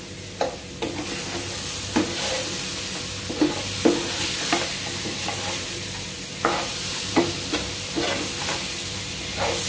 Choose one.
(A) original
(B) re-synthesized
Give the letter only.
A